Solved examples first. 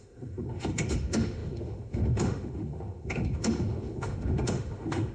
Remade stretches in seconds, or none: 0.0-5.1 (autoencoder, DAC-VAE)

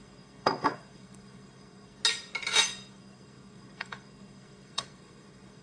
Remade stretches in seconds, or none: 0.0-2.0 (codec, SNAC); 2.7-5.6